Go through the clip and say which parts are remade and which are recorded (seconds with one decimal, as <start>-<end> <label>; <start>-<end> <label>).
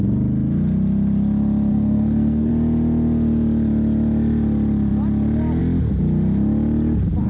0.0-1.7 recorded; 1.7-2.5 remade; 2.5-7.3 recorded